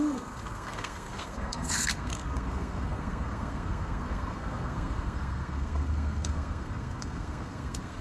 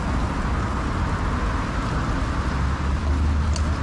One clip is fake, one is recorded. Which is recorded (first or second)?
second